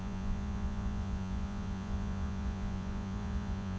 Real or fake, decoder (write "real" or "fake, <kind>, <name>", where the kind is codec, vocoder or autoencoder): fake, vocoder, Vocos